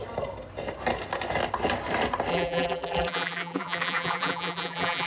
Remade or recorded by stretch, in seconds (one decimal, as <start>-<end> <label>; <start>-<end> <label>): 0.0-2.3 recorded; 2.3-5.1 remade